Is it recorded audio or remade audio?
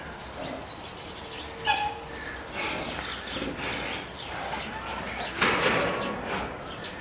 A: recorded